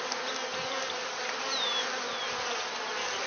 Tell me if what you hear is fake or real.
real